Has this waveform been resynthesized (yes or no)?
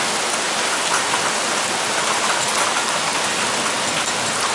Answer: no